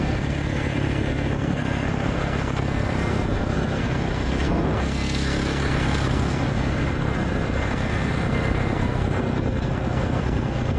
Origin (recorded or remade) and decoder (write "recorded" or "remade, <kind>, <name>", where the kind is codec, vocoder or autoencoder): remade, codec, SNAC